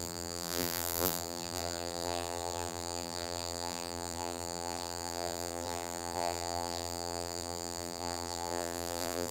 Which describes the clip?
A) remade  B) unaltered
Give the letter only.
A